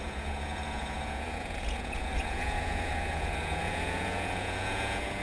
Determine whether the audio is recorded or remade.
remade